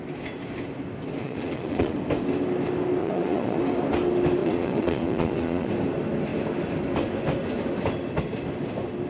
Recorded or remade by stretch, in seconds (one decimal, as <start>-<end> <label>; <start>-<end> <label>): 0.0-1.2 recorded; 1.2-2.0 remade; 2.0-3.0 recorded; 3.0-3.6 remade; 3.6-4.4 recorded; 4.4-5.7 remade; 5.7-9.1 recorded